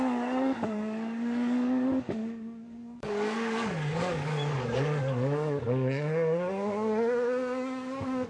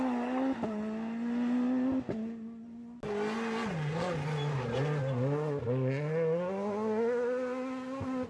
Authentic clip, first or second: second